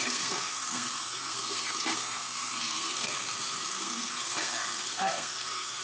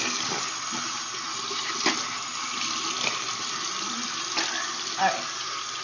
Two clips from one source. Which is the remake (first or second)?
first